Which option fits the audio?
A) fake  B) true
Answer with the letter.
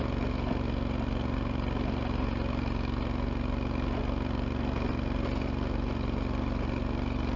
B